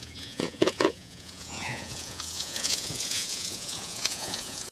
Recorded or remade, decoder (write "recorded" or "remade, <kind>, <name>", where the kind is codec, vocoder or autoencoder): remade, vocoder, Vocos